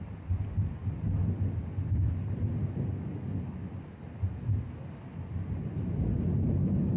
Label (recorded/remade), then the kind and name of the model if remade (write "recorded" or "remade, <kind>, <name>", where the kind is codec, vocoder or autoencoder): recorded